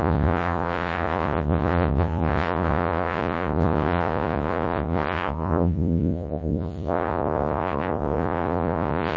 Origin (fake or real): fake